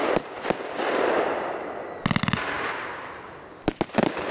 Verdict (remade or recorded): recorded